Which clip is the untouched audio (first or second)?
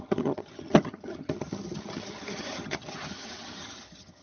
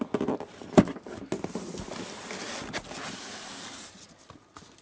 second